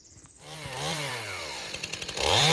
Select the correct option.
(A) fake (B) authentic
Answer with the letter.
A